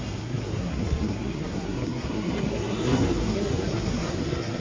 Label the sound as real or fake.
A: fake